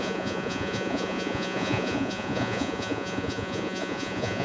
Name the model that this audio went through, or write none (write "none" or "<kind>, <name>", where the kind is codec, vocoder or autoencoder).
vocoder, Vocos